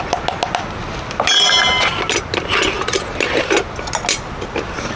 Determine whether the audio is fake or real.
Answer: real